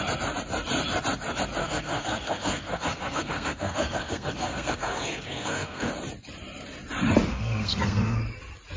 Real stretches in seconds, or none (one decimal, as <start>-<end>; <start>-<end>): 0.0-1.6; 5.9-7.3; 8.2-8.8

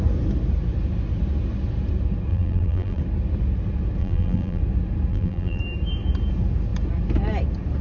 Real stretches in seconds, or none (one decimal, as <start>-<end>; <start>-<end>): 0.0-2.3; 3.0-4.0; 4.6-5.1; 5.6-7.8